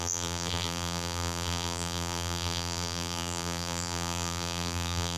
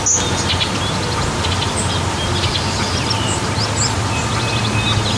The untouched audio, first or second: second